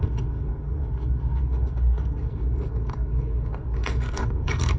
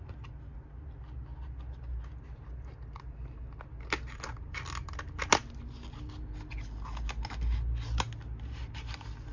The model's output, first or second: first